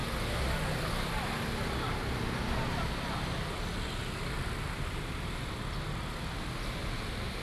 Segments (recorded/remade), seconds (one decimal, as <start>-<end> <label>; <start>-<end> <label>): 0.0-7.4 recorded